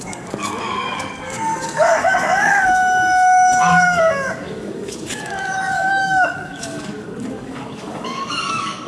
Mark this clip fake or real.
fake